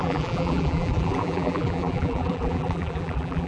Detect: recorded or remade remade